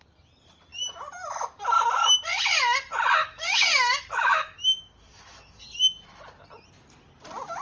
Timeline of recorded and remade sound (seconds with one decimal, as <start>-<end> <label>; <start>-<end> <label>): 0.0-3.2 recorded; 3.2-5.6 remade; 5.6-7.6 recorded

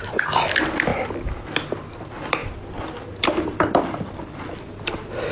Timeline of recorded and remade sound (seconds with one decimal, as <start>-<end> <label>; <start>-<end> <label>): 0.0-0.9 remade; 0.9-2.0 recorded; 2.0-2.4 remade; 2.4-3.7 recorded; 3.7-5.3 remade

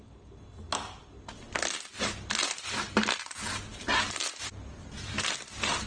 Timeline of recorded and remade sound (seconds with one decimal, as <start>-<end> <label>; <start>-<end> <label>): 0.0-5.9 recorded

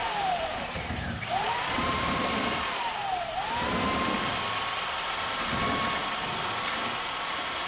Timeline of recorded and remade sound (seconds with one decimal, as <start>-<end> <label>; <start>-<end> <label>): 0.0-2.3 remade; 2.3-7.7 recorded

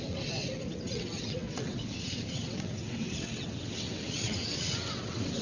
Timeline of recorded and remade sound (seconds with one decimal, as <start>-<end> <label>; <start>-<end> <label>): 0.0-5.4 remade

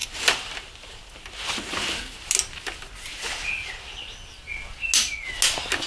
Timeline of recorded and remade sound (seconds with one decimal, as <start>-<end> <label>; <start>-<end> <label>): 0.0-5.9 recorded

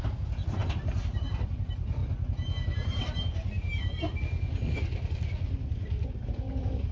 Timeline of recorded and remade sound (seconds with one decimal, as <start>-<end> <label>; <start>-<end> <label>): 0.0-6.9 recorded